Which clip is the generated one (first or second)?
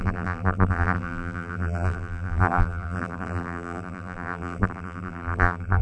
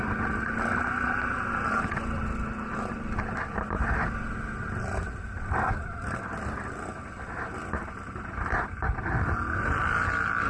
first